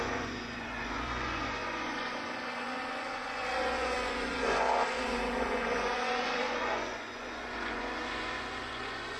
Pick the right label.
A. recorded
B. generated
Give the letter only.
B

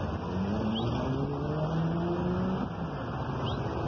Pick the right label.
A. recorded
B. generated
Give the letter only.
A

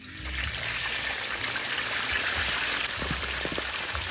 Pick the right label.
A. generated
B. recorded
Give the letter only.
A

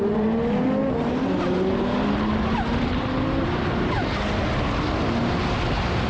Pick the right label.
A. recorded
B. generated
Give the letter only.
A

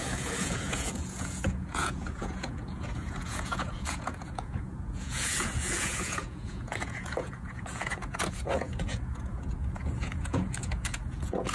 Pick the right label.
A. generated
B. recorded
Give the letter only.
A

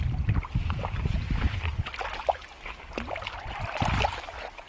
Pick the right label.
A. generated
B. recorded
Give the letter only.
B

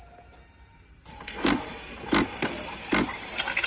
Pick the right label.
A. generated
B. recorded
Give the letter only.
B